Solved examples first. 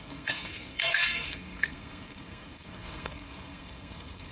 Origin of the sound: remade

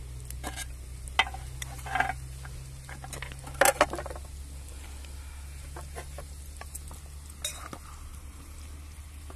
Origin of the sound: recorded